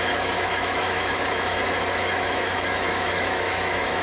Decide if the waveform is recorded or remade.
remade